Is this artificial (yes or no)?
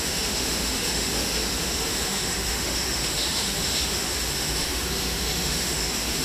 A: yes